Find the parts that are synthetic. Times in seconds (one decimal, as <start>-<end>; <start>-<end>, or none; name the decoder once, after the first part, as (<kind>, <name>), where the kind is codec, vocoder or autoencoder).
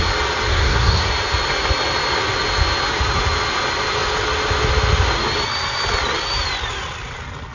0.5-1.1 (codec, SNAC)